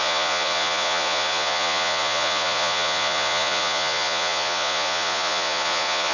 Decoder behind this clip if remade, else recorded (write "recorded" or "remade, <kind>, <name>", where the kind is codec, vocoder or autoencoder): remade, vocoder, Vocos